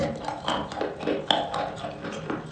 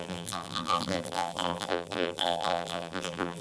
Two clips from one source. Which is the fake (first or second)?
second